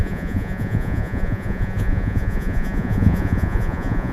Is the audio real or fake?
fake